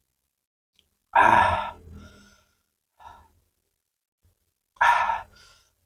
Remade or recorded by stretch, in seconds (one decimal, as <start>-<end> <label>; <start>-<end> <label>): 0.0-5.9 recorded